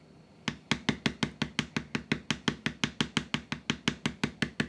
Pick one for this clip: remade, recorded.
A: recorded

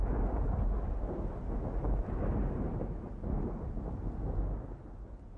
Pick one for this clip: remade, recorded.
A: recorded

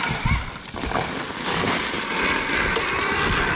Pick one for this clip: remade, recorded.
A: recorded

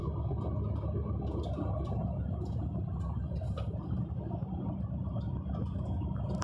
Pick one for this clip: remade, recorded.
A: recorded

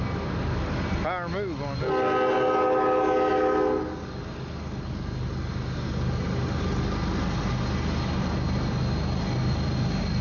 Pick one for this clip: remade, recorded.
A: recorded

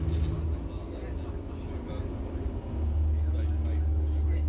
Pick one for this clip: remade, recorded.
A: recorded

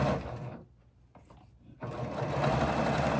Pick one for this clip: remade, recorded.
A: recorded